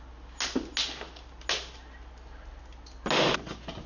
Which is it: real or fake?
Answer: real